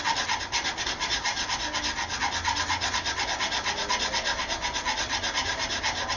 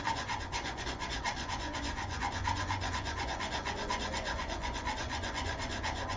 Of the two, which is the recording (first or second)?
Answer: first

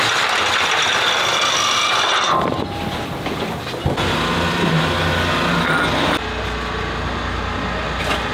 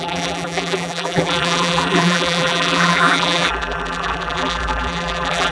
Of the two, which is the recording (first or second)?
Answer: first